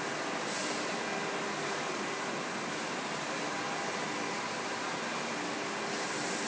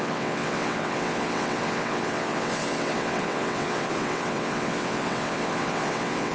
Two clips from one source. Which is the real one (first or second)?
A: first